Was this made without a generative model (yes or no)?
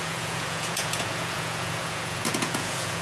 no